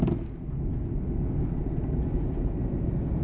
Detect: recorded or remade recorded